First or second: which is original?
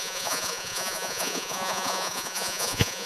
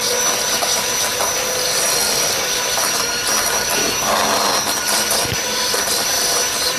second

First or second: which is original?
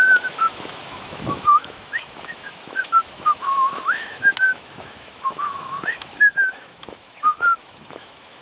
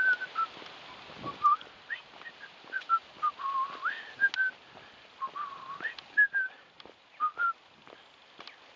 second